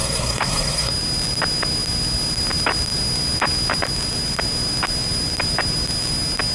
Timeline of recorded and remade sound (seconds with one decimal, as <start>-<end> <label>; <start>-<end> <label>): 0.0-0.9 remade; 0.9-6.5 recorded